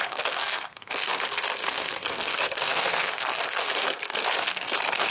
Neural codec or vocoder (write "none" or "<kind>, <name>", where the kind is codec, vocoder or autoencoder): codec, SNAC